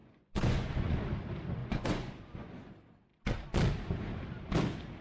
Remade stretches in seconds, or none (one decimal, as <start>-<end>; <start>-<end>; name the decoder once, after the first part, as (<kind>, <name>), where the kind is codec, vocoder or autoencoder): 0.0-1.0 (vocoder, Vocos); 1.6-2.7